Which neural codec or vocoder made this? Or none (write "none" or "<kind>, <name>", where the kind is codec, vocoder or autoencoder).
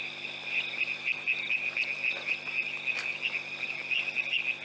none